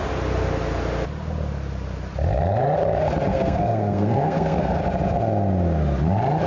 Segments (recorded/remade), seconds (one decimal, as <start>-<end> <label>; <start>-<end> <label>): 0.0-3.3 recorded; 3.3-4.8 remade; 4.8-6.5 recorded